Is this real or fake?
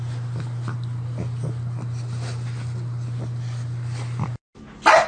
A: real